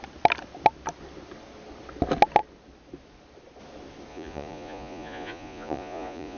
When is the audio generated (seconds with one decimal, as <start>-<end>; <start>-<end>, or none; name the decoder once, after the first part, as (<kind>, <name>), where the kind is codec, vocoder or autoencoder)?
4.1-6.4 (vocoder, Vocos)